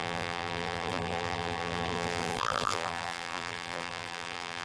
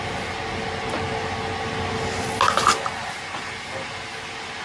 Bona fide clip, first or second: second